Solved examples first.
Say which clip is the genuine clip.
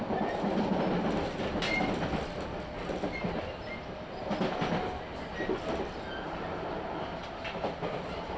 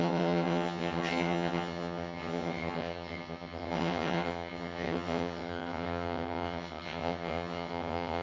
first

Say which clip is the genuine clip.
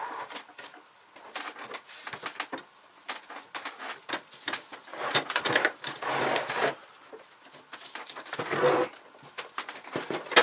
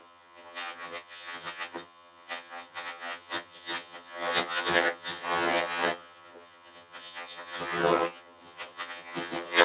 first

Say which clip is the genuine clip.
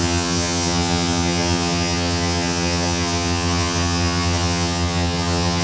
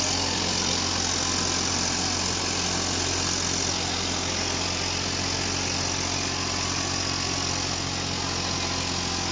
second